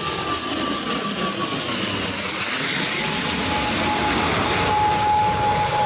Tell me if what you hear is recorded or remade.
recorded